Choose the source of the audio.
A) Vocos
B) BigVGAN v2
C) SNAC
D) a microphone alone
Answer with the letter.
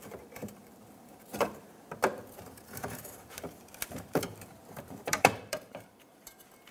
B